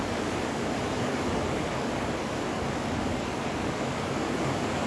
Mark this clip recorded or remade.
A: remade